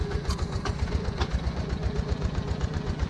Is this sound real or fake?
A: fake